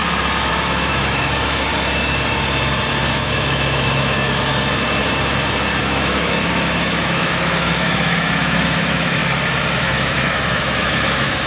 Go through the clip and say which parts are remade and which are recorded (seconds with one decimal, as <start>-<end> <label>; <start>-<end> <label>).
0.0-0.5 recorded; 0.5-1.7 remade; 1.7-3.1 recorded; 3.1-4.5 remade; 4.5-5.8 recorded; 5.8-9.2 remade; 9.2-9.8 recorded; 9.8-11.5 remade